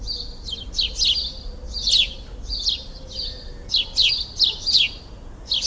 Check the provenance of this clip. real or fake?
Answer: real